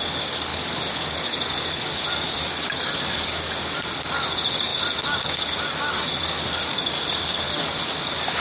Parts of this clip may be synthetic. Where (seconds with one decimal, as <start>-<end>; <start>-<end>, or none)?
0.0-8.4